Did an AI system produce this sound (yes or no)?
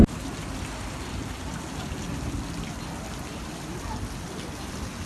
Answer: yes